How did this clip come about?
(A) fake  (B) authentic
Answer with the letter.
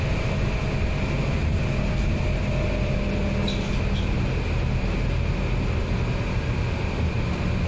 B